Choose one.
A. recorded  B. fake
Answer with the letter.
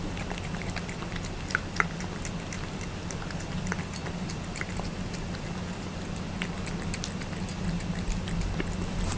A